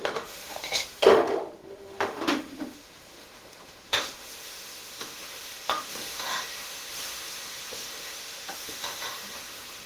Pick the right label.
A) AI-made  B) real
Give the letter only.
A